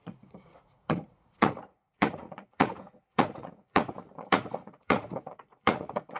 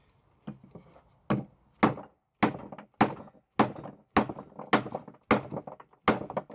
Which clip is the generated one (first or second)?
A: first